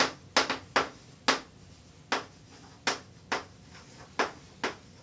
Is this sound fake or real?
real